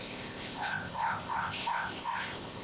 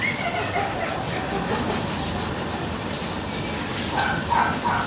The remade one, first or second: first